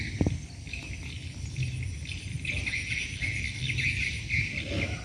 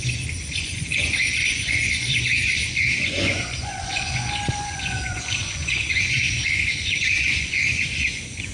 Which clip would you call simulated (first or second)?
second